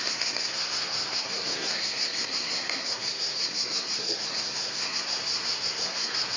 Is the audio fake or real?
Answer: fake